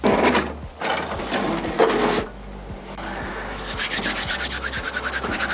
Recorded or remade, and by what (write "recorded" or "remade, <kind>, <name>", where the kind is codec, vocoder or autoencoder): recorded